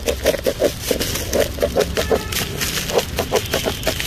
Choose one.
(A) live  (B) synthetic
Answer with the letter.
A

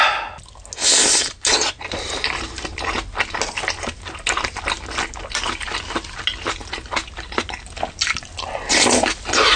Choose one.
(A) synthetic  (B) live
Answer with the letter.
B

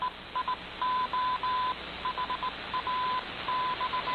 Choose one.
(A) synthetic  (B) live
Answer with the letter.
B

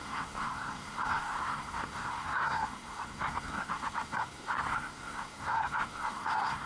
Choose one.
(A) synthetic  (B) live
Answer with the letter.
A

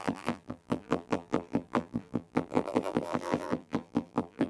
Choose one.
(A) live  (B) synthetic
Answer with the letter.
B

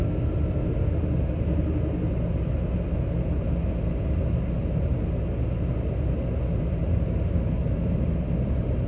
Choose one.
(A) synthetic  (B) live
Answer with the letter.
B